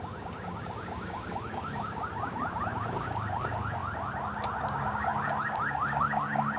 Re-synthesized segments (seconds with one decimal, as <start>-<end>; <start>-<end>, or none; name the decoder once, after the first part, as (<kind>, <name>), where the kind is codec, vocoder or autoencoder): 0.0-3.8 (codec, DAC); 4.6-6.6